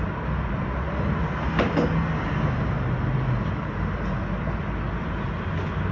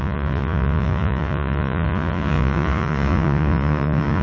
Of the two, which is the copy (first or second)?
second